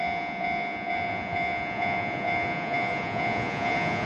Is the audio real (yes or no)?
no